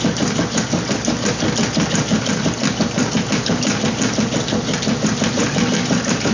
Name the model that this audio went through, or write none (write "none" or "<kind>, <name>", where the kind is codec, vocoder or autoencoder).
none